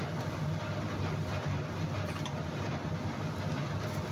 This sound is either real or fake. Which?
real